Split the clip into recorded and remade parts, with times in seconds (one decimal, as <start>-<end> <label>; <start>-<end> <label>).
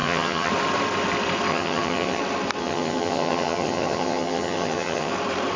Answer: 0.0-0.5 remade; 0.5-1.5 recorded; 1.5-2.2 remade; 2.2-2.6 recorded; 2.6-5.1 remade; 5.1-5.6 recorded